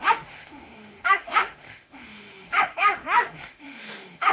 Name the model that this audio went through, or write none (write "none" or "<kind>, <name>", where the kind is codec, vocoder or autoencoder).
autoencoder, DAC-VAE